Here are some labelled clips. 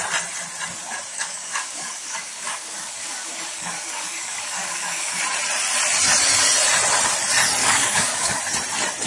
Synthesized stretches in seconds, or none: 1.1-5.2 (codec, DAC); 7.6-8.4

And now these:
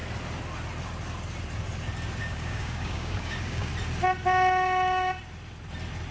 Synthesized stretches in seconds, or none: 2.2-3.7 (codec, DAC)

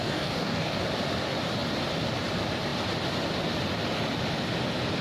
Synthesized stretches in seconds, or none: 0.0-0.8 (codec, DAC)

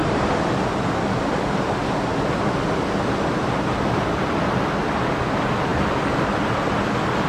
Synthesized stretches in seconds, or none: none